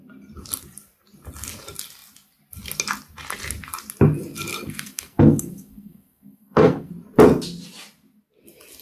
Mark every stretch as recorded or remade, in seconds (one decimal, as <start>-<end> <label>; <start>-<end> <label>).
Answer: 0.0-4.5 recorded; 4.5-6.9 remade; 6.9-8.8 recorded